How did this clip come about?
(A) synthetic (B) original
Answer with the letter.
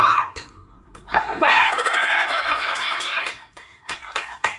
A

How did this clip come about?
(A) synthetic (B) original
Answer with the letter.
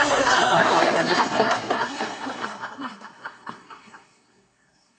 A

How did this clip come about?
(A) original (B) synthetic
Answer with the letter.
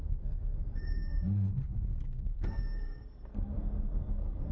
B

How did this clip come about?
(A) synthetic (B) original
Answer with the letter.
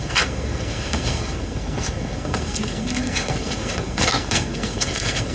A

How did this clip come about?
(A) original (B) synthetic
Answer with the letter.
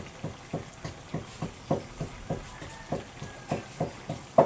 A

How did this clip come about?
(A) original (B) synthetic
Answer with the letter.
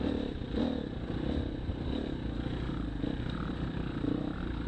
A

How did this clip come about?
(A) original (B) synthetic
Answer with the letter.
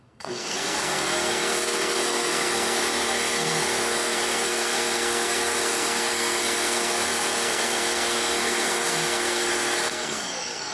B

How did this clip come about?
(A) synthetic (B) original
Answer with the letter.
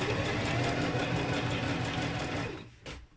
B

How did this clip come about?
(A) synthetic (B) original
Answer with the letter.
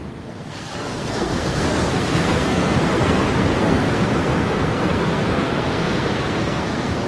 A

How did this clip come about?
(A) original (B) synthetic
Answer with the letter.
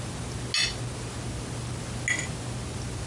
A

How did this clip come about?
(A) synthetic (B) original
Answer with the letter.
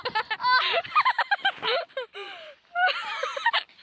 B